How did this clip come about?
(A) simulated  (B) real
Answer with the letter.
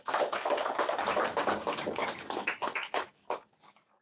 A